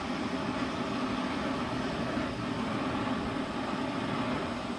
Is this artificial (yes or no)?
no